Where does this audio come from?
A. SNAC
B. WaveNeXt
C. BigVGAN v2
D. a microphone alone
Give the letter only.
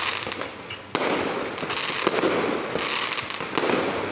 D